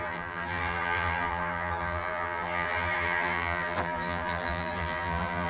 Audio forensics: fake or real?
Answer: fake